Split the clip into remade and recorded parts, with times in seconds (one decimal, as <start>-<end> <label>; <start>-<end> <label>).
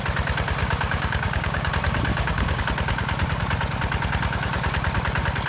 0.0-0.6 recorded; 0.6-1.7 remade; 1.7-2.1 recorded; 2.1-2.6 remade; 2.6-5.5 recorded